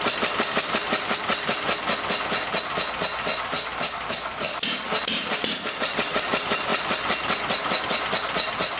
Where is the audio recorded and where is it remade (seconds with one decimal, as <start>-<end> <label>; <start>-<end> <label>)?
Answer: 0.0-8.8 recorded

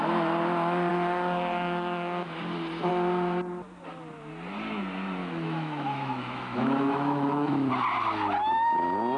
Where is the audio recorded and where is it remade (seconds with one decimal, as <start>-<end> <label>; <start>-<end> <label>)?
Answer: 0.0-5.2 recorded; 5.2-7.7 remade; 7.7-9.2 recorded

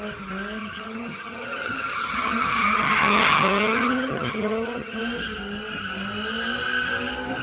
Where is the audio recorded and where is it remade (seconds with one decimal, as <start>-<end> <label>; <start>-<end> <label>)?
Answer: 0.0-0.6 recorded; 0.6-5.0 remade; 5.0-7.4 recorded

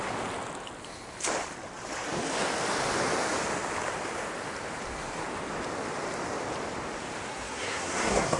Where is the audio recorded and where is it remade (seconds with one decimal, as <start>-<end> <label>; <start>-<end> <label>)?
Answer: 0.0-7.3 recorded; 7.3-8.4 remade

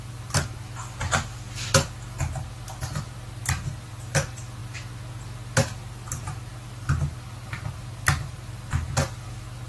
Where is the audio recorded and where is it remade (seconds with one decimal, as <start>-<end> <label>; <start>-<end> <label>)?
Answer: 0.0-9.7 recorded